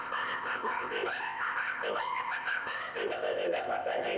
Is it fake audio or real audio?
fake